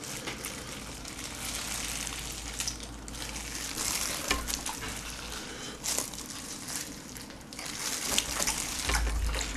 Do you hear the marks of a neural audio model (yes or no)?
no